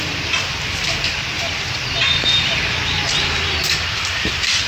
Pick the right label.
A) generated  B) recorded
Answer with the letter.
A